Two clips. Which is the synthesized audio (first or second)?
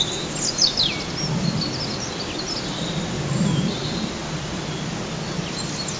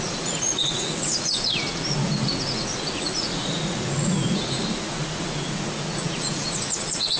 second